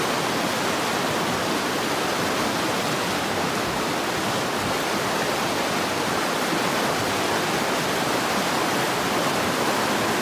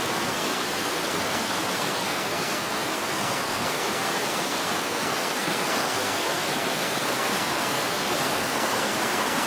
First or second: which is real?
first